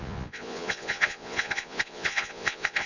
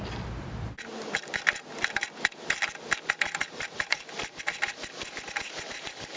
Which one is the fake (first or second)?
first